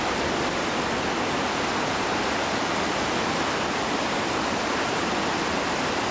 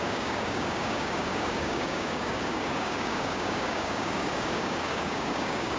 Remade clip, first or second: second